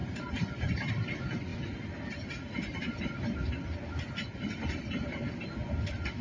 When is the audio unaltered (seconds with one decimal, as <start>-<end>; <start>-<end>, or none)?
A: 0.9-1.5; 3.0-6.2